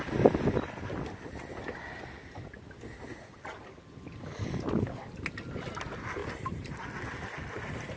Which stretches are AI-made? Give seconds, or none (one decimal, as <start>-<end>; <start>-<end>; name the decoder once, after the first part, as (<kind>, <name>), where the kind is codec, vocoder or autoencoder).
6.2-6.9 (vocoder, BigVGAN v2)